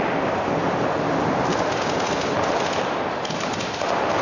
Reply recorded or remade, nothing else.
recorded